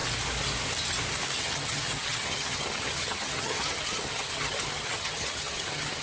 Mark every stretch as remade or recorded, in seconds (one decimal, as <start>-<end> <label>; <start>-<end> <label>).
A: 0.0-1.4 recorded; 1.4-6.0 remade